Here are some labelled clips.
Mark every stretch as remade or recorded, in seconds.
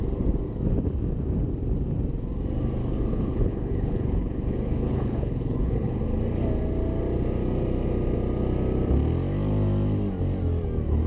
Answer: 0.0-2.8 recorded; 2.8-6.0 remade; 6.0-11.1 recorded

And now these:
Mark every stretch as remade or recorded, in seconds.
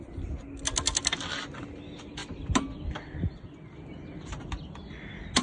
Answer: 0.0-5.4 recorded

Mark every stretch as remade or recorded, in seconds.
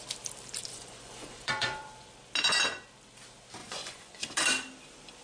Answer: 0.0-0.7 recorded; 0.7-2.1 remade; 2.1-3.6 recorded; 3.6-4.2 remade; 4.2-5.2 recorded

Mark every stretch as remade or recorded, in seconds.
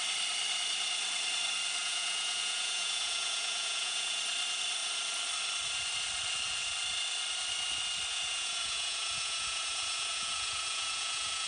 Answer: 0.0-1.8 recorded; 1.8-4.2 remade; 4.2-8.1 recorded; 8.1-11.5 remade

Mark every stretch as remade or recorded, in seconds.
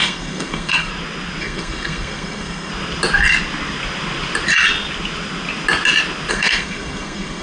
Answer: 0.0-0.9 remade; 0.9-1.4 recorded; 1.4-2.7 remade; 2.7-6.3 recorded; 6.3-7.4 remade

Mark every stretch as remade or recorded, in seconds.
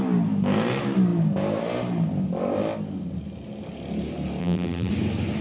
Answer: 0.0-4.4 recorded; 4.4-4.9 remade; 4.9-5.4 recorded